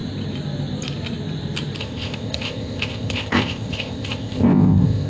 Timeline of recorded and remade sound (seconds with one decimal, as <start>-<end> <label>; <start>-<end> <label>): 0.0-1.8 recorded; 1.8-5.1 remade